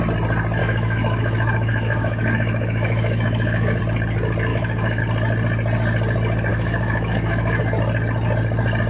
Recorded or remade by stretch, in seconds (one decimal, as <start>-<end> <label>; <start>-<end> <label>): 0.0-0.6 recorded; 0.6-3.8 remade; 3.8-4.5 recorded; 4.5-5.0 remade; 5.0-6.5 recorded; 6.5-7.6 remade; 7.6-8.9 recorded